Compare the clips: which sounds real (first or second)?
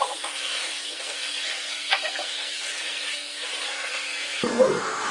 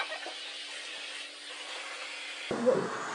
second